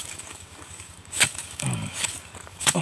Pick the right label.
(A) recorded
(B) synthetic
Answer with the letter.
B